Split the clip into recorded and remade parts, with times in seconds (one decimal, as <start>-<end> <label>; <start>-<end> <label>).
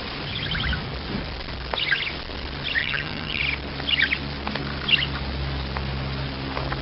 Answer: 0.0-2.8 recorded; 2.8-3.4 remade; 3.4-6.8 recorded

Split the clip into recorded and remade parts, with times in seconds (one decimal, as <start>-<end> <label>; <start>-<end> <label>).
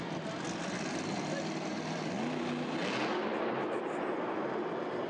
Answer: 0.0-5.1 remade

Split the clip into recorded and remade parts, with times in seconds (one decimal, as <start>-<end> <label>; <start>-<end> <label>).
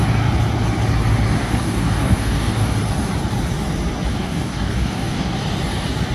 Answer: 0.0-1.4 recorded; 1.4-2.7 remade; 2.7-4.1 recorded; 4.1-5.4 remade; 5.4-6.1 recorded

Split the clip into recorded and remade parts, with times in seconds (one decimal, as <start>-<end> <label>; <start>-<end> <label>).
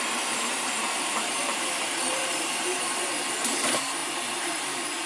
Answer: 0.0-5.1 remade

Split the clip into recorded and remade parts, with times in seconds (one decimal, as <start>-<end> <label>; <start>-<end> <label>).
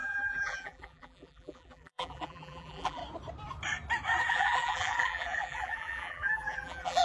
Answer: 0.0-3.0 remade; 3.0-4.3 recorded; 4.3-7.0 remade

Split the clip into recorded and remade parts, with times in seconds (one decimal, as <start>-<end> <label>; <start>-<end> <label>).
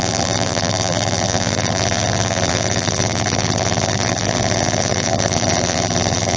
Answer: 0.0-6.4 remade